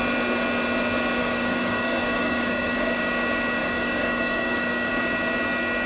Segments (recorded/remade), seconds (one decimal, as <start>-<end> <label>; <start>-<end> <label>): 0.0-1.2 recorded; 1.2-3.0 remade; 3.0-3.6 recorded; 3.6-4.9 remade; 4.9-5.9 recorded